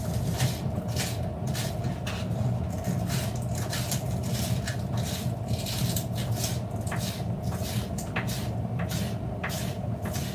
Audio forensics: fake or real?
real